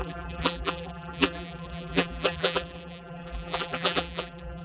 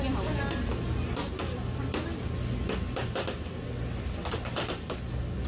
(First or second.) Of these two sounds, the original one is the second